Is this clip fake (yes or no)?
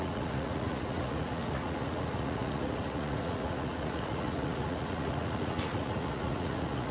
yes